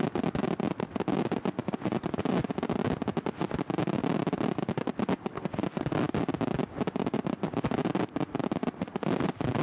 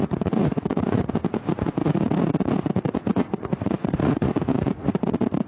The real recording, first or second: first